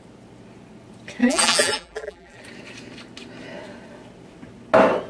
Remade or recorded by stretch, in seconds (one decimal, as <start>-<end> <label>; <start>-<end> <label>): 0.0-1.2 recorded; 1.2-2.4 remade; 2.4-5.1 recorded